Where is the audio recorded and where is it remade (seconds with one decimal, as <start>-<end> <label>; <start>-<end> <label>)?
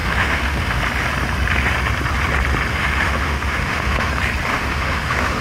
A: 0.0-0.8 remade; 0.8-2.7 recorded; 2.7-4.1 remade; 4.1-4.5 recorded; 4.5-5.4 remade